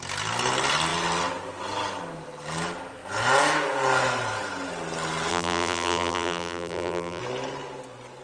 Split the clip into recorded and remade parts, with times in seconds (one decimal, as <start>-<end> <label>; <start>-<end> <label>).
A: 0.0-5.3 recorded; 5.3-7.2 remade; 7.2-8.2 recorded